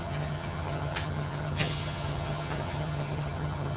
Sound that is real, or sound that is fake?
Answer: fake